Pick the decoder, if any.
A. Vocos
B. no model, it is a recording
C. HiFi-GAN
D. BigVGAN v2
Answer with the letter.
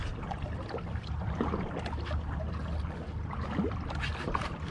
B